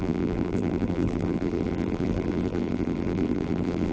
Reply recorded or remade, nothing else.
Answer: remade